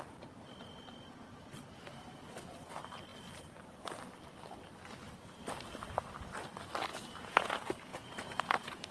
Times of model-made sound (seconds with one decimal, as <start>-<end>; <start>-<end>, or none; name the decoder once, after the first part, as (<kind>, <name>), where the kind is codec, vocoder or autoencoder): 6.9-7.5 (vocoder, Vocos); 7.9-8.9